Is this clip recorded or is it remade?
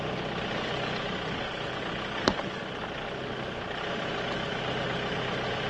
recorded